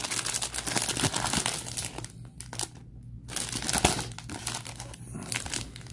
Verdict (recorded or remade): recorded